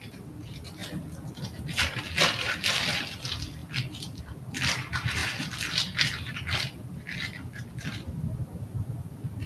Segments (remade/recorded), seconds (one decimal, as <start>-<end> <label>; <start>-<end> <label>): 0.0-0.8 remade; 0.8-1.8 recorded; 1.8-3.6 remade; 3.6-4.2 recorded; 4.2-9.5 remade